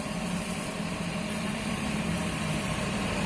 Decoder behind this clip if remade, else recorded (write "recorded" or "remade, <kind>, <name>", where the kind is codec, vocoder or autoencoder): remade, vocoder, BigVGAN v2